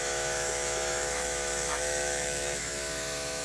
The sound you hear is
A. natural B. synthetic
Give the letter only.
B